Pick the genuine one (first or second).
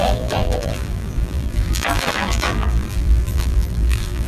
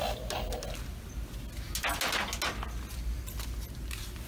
second